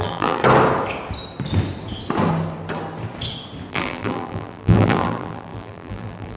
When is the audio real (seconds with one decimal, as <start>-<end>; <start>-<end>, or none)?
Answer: 0.4-3.7